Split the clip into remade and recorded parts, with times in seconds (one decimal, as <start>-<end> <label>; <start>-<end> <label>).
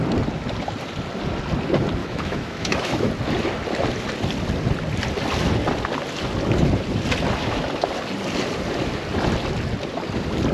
0.0-2.0 recorded; 2.0-3.1 remade; 3.1-10.5 recorded